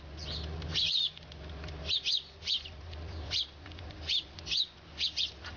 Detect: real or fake fake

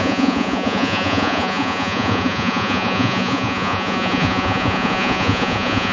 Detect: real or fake fake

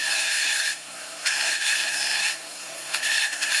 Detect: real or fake fake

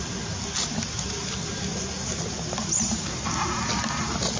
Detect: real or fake real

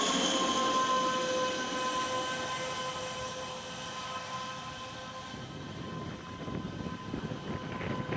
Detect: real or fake real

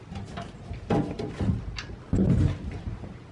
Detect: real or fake real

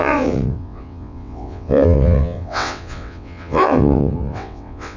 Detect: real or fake fake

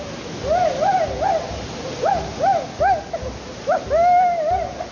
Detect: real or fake real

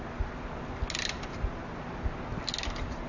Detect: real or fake real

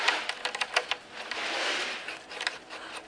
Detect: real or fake real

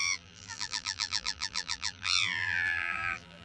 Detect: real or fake fake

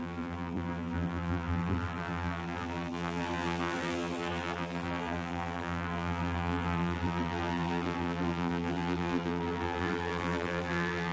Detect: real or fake fake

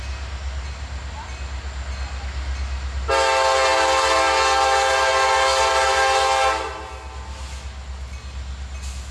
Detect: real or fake real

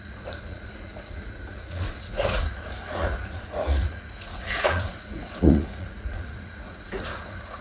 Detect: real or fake fake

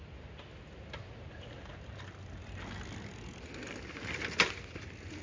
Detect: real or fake real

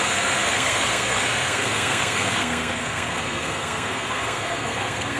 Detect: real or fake fake